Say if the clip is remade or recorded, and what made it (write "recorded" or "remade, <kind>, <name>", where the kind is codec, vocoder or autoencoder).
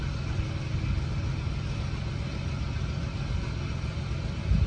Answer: recorded